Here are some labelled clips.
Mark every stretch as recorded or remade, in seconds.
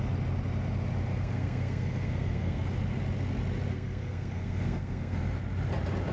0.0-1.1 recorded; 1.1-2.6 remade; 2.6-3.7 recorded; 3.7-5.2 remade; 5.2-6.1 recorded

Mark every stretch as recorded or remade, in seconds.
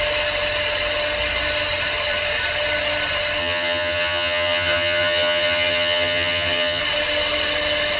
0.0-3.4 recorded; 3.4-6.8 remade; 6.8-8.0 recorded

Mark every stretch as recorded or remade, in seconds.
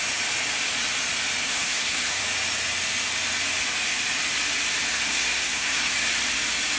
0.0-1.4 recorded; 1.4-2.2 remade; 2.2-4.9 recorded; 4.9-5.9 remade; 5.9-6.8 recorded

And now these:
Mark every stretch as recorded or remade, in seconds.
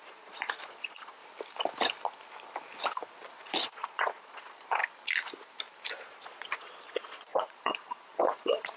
0.0-1.2 remade; 1.2-3.4 recorded; 3.4-4.8 remade; 4.8-6.0 recorded; 6.0-8.8 remade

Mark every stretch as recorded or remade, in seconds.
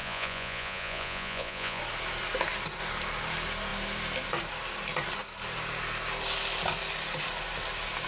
0.0-1.8 remade; 1.8-8.1 recorded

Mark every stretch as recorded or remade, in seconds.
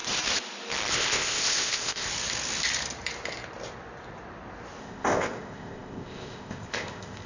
0.0-0.9 recorded; 0.9-2.1 remade; 2.1-4.8 recorded; 4.8-7.3 remade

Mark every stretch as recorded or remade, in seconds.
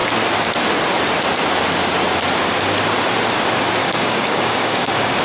0.0-3.8 recorded; 3.8-5.2 remade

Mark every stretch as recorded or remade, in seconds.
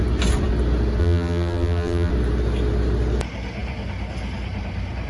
0.0-1.0 recorded; 1.0-2.1 remade; 2.1-5.1 recorded